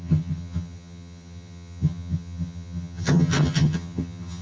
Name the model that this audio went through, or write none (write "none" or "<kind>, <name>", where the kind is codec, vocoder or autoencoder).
vocoder, HiFi-GAN